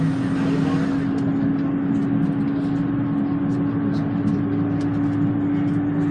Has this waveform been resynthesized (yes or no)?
no